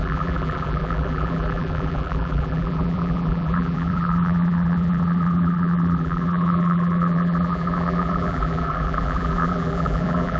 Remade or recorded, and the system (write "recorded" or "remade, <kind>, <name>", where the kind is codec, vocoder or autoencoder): remade, vocoder, BigVGAN v2